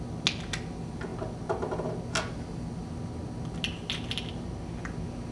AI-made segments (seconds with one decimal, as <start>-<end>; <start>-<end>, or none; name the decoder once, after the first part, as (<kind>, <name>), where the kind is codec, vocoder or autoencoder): none